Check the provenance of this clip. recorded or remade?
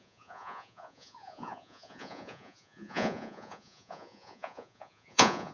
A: remade